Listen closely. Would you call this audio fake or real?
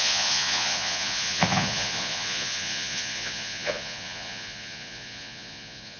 fake